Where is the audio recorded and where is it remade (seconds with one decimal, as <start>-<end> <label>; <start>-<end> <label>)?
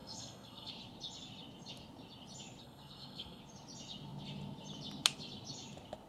0.0-0.7 remade; 0.7-2.6 recorded; 2.6-3.4 remade; 3.4-6.1 recorded